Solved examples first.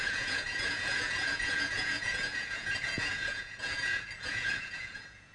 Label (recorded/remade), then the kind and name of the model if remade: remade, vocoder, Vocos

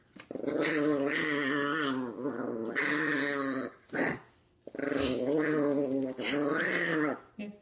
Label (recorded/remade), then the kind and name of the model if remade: recorded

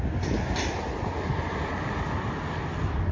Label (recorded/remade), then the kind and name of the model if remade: recorded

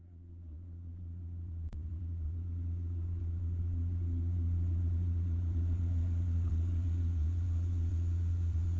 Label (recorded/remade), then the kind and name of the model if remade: remade, vocoder, Vocos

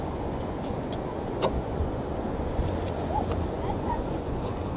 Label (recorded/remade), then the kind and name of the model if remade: remade, vocoder, Vocos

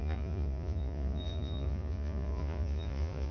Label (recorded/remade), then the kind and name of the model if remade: remade, vocoder, Vocos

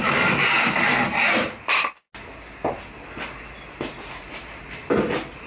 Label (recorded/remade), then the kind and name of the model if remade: recorded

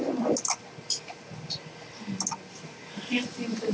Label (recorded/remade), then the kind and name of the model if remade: recorded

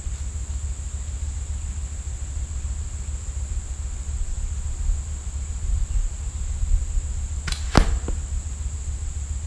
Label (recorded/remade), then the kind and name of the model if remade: recorded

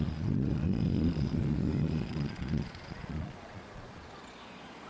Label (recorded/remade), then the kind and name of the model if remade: remade, vocoder, Vocos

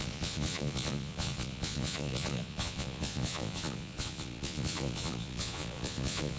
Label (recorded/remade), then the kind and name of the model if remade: remade, vocoder, Vocos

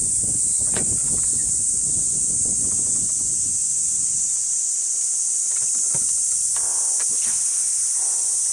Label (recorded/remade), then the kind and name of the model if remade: remade, vocoder, Vocos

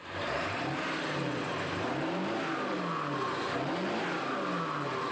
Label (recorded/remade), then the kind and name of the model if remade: recorded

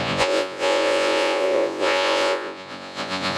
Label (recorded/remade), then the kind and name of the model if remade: remade, vocoder, Vocos